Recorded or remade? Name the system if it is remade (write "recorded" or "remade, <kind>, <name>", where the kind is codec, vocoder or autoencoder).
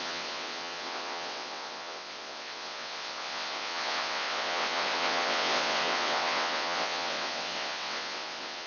remade, vocoder, WaveNeXt